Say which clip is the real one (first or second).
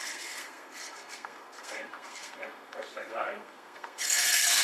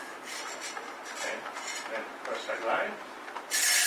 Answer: second